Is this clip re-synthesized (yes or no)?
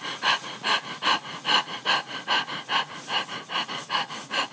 yes